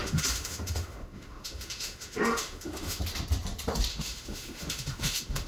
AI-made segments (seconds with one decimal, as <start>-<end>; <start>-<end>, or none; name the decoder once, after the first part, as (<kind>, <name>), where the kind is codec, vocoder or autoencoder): 0.0-3.0 (autoencoder, DAC-VAE); 3.9-5.5